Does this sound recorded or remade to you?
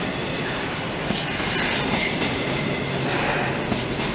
recorded